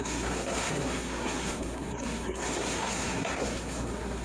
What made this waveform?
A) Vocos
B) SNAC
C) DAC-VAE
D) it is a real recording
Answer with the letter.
B